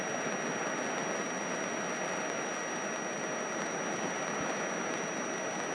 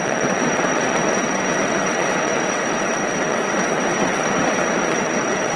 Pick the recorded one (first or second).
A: first